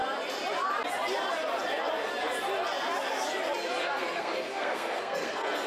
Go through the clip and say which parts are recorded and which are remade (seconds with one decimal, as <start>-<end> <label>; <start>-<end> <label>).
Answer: 0.0-3.8 recorded; 3.8-5.7 remade